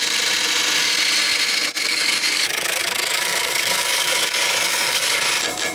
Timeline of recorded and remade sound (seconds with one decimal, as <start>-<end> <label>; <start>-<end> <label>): 0.0-1.8 recorded; 1.8-5.2 remade; 5.2-5.7 recorded